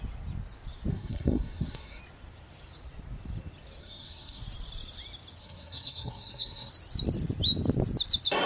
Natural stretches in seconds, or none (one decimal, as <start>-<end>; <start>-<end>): 0.0-0.9; 2.0-3.8; 4.4-5.4; 6.7-8.5